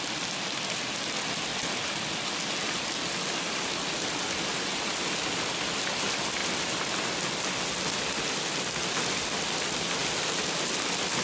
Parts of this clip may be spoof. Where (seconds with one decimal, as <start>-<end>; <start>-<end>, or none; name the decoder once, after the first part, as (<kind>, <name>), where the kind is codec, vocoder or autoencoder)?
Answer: none